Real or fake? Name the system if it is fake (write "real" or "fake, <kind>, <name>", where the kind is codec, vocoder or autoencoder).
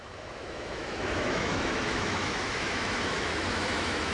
fake, autoencoder, DAC-VAE